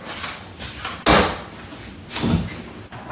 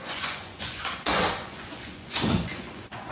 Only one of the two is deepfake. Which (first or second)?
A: second